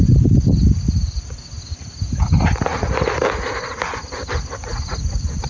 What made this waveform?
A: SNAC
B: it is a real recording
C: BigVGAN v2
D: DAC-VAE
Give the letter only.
B